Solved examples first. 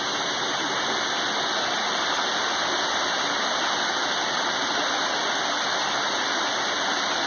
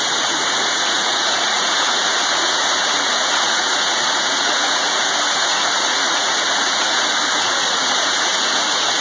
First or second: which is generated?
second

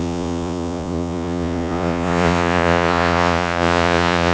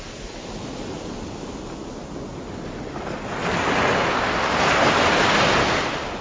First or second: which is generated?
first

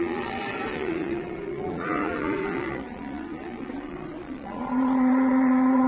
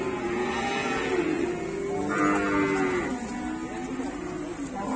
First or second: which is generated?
first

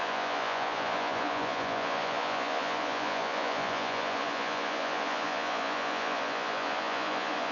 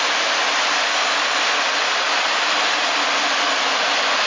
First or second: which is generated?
first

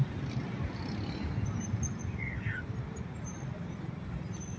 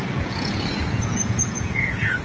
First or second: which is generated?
second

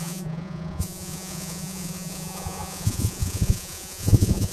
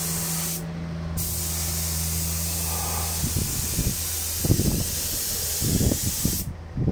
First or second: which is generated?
first